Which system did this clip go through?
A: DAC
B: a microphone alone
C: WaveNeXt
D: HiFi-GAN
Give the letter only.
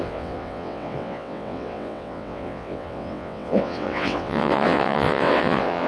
C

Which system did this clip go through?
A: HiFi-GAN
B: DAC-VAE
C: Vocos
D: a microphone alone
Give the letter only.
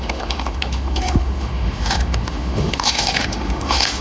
B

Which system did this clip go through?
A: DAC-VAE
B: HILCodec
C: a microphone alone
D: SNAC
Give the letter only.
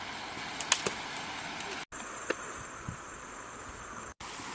C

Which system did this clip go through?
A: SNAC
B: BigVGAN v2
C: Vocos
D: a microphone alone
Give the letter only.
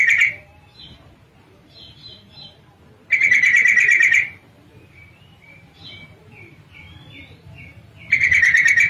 B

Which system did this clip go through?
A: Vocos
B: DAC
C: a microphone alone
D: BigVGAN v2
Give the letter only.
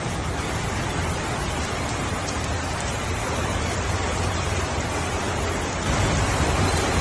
D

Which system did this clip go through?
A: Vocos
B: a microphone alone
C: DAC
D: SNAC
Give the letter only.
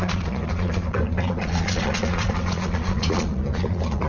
A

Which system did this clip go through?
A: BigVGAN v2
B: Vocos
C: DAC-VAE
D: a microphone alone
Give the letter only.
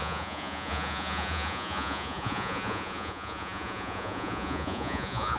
B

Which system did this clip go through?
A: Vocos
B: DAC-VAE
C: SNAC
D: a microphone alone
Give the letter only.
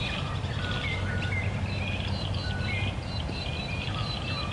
D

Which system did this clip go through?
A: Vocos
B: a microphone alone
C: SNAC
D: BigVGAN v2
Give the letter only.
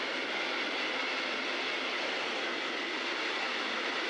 B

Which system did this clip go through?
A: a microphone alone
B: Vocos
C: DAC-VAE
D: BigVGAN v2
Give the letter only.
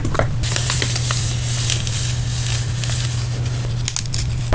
A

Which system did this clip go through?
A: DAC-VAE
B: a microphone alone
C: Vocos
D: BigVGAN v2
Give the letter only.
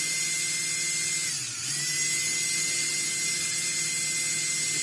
B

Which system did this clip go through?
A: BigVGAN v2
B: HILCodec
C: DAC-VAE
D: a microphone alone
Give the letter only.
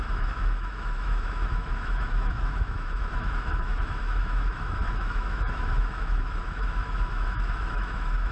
C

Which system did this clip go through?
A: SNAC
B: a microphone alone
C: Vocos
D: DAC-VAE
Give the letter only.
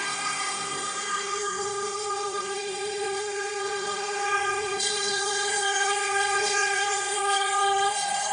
A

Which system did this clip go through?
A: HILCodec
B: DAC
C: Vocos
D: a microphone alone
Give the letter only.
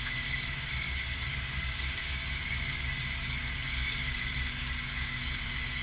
B